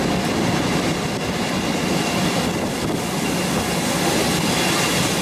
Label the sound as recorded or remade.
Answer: recorded